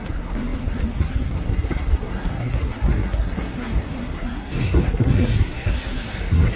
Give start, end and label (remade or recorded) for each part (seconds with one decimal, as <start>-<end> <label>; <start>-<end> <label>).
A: 0.0-6.6 remade